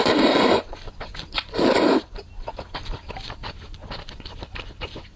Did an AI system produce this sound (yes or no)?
no